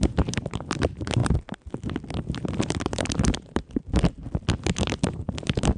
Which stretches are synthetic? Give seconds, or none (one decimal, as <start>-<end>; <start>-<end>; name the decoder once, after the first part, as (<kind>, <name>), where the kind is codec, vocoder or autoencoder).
0.0-1.2 (vocoder, BigVGAN v2); 2.2-4.2; 4.8-5.8